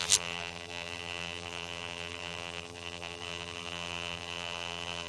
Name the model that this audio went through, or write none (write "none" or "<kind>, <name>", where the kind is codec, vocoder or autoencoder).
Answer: vocoder, BigVGAN v2